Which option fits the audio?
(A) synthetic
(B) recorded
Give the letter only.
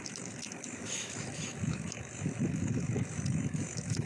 A